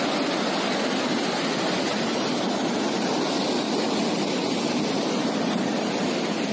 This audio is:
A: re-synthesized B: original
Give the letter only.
B